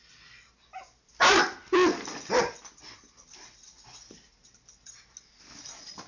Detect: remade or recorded recorded